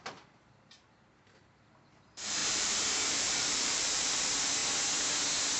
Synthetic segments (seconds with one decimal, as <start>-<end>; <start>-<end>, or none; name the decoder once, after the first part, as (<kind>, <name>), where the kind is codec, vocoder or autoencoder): 0.0-4.6 (vocoder, BigVGAN v2)